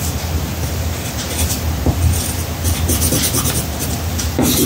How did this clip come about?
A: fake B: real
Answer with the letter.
B